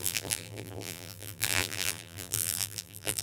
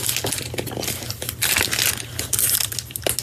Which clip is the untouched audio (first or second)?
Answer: second